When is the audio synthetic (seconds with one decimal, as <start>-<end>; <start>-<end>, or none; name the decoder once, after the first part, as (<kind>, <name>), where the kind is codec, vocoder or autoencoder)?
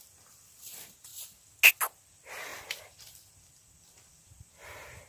0.0-1.1 (vocoder, BigVGAN v2); 2.0-5.1